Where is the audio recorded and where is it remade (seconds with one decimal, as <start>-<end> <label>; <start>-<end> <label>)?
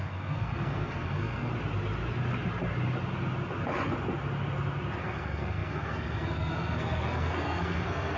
0.0-1.5 remade; 1.5-5.0 recorded; 5.0-8.2 remade